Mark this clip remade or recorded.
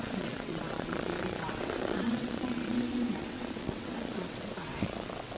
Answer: remade